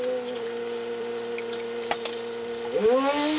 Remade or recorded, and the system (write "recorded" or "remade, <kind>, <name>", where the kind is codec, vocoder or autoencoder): recorded